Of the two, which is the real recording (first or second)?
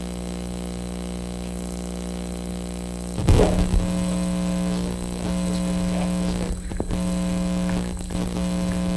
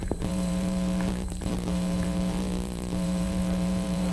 first